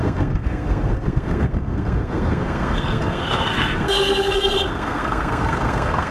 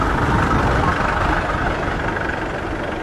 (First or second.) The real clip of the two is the second